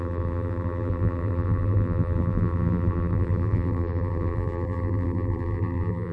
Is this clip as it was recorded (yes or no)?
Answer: no